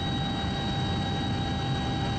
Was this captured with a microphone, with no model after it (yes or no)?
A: yes